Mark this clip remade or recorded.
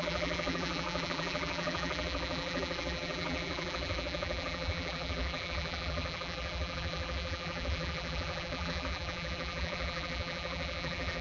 remade